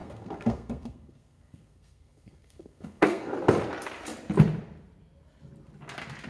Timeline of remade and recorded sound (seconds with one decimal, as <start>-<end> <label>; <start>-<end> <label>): 0.0-3.3 remade; 3.3-6.3 recorded